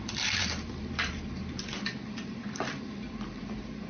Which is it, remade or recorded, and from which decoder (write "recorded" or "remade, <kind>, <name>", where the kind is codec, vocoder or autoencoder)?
remade, vocoder, BigVGAN v2